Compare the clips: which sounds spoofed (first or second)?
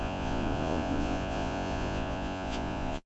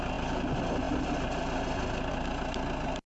first